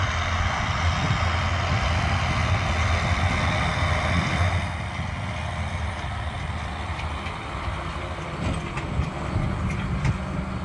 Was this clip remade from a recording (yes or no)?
no